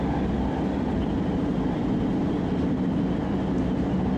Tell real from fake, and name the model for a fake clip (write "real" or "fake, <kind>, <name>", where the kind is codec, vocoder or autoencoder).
real